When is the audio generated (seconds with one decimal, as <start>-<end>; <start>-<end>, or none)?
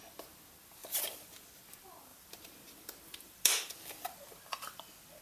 0.8-1.6; 2.1-5.2